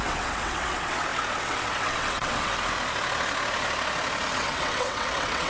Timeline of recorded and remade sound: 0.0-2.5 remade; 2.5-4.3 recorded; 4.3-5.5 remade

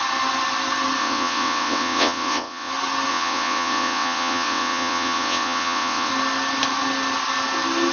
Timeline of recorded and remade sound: 0.0-1.0 recorded; 1.0-2.7 remade; 2.7-3.1 recorded; 3.1-6.1 remade; 6.1-7.9 recorded

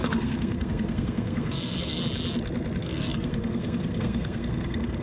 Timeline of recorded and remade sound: 0.0-2.0 remade; 2.0-2.8 recorded; 2.8-5.0 remade